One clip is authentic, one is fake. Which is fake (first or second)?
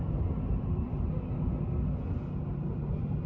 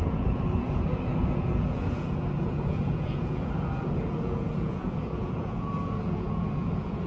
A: second